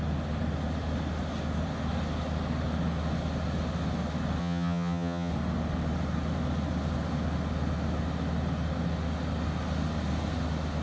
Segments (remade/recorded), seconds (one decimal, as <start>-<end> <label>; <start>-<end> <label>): 0.0-4.4 recorded; 4.4-5.3 remade; 5.3-10.8 recorded